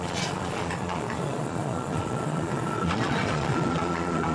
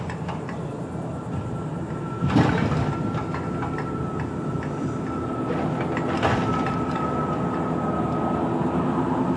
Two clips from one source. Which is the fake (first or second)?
first